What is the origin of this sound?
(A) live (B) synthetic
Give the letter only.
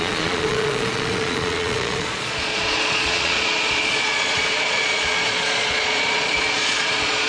B